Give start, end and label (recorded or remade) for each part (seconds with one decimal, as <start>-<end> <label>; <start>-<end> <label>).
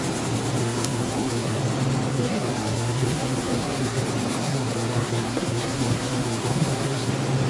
0.0-0.6 recorded; 0.6-1.6 remade; 1.6-2.1 recorded; 2.1-4.0 remade; 4.0-4.4 recorded; 4.4-7.1 remade; 7.1-7.5 recorded